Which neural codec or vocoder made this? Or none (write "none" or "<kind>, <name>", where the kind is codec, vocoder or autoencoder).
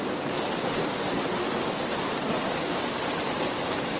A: none